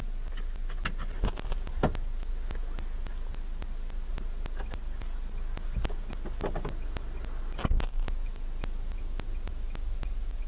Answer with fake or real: real